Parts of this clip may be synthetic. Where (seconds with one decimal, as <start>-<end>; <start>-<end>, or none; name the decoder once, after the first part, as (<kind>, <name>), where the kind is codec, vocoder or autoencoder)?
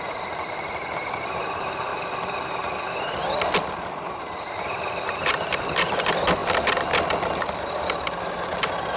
none